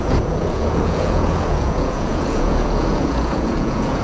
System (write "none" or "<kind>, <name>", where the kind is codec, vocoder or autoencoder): vocoder, Vocos